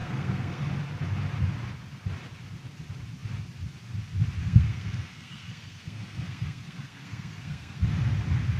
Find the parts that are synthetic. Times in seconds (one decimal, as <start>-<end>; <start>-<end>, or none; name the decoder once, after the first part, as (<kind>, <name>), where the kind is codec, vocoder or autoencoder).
0.0-0.6 (codec, SNAC); 4.4-7.8